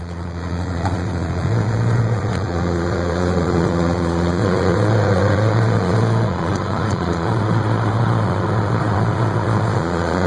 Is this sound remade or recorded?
remade